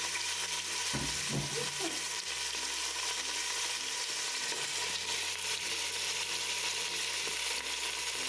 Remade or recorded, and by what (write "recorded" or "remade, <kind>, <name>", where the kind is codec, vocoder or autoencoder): recorded